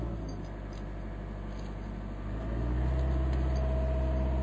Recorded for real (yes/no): yes